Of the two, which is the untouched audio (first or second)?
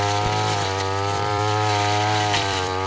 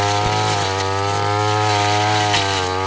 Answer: second